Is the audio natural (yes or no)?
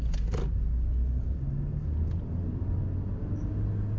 yes